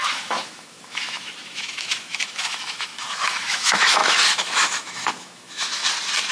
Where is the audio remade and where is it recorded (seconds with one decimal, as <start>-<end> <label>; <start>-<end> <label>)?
0.0-5.8 remade; 5.8-6.3 recorded